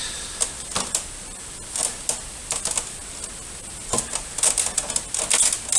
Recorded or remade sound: recorded